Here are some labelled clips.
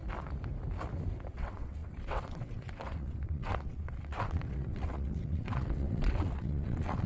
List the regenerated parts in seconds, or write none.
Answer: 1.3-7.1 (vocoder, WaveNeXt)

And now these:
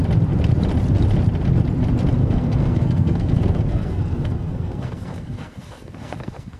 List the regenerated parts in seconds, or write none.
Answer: 2.2-6.6 (codec, SNAC)

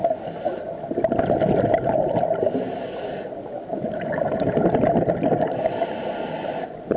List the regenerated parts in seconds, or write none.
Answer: none

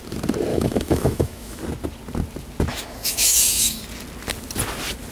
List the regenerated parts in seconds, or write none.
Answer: 0.5-1.6 (autoencoder, DAC-VAE); 2.7-3.8